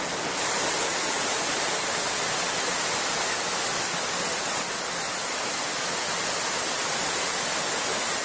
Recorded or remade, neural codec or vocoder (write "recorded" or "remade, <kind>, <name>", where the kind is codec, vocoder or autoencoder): recorded